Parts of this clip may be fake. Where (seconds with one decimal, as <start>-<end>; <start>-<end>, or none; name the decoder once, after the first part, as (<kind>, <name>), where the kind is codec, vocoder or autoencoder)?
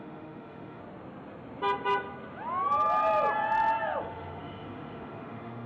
0.0-0.8 (autoencoder, DAC-VAE); 4.0-5.7